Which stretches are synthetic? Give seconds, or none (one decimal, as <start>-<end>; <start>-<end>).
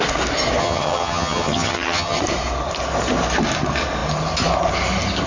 0.6-2.2